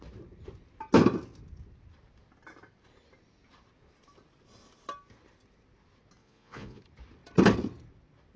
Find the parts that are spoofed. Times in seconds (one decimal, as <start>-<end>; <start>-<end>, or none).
6.2-6.8